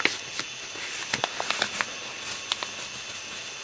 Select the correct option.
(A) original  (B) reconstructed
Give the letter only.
A